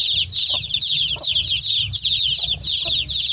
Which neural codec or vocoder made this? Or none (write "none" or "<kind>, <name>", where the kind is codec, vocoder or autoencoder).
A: none